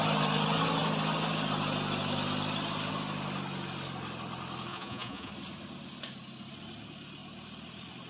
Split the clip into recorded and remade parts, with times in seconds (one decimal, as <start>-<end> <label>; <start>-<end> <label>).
0.0-4.7 recorded; 4.7-5.3 remade; 5.3-8.1 recorded